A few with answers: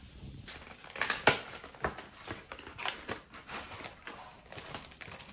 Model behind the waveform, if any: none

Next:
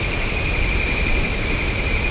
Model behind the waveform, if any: none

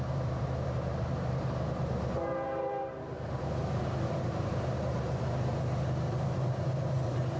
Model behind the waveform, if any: vocoder, BigVGAN v2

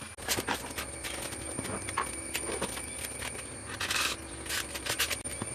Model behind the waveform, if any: none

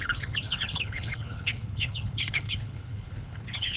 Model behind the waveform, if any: codec, HILCodec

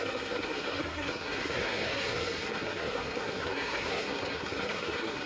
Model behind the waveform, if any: codec, SNAC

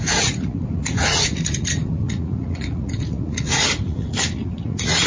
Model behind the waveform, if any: vocoder, Vocos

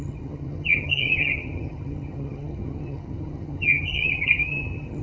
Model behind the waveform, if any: vocoder, HiFi-GAN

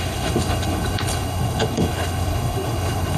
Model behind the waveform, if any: codec, HILCodec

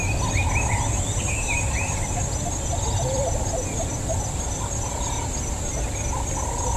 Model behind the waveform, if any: none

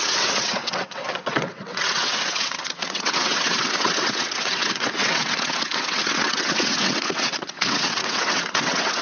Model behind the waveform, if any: vocoder, WaveNeXt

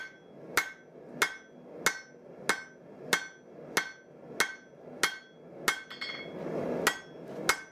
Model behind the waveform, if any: none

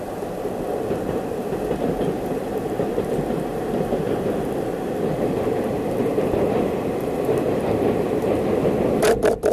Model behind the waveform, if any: none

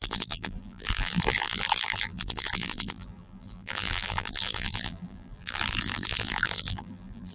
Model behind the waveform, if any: vocoder, BigVGAN v2